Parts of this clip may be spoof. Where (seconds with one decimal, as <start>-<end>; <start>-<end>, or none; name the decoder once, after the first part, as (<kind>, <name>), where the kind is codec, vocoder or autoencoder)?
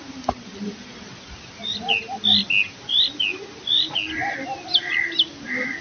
none